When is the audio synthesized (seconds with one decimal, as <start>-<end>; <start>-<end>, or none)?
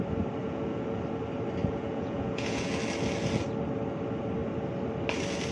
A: 0.4-1.0; 1.6-2.7